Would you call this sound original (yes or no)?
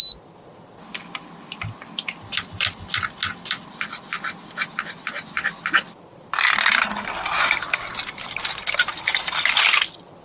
yes